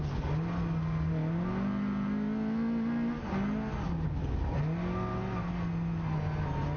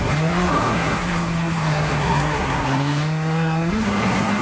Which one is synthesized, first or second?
second